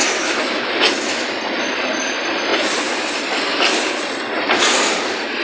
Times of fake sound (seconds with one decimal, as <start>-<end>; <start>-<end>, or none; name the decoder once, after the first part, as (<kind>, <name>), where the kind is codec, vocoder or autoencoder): 0.0-0.7 (autoencoder, DAC-VAE)